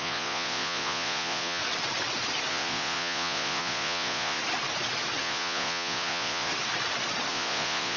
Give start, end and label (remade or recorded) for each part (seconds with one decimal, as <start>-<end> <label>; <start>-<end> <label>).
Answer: 0.0-1.6 remade; 1.6-2.5 recorded; 2.5-4.4 remade; 4.4-5.2 recorded; 5.2-6.5 remade; 6.5-7.3 recorded; 7.3-8.0 remade